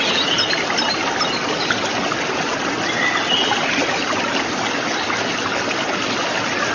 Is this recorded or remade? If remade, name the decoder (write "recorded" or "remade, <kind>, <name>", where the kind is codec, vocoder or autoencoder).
recorded